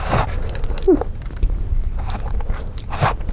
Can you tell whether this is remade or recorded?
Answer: recorded